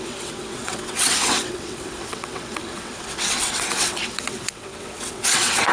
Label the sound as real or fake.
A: fake